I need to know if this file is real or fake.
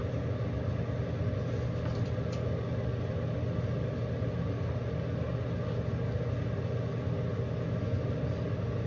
real